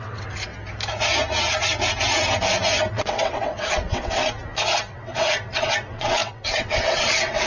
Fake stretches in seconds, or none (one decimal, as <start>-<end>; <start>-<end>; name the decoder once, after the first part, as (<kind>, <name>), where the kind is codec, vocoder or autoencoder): 0.0-0.5 (vocoder, WaveNeXt); 2.9-4.2; 4.9-7.5